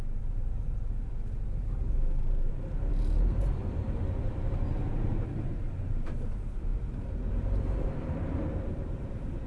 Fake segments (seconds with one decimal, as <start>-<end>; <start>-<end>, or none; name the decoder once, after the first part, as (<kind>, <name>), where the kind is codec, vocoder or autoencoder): 0.0-9.5 (vocoder, BigVGAN v2)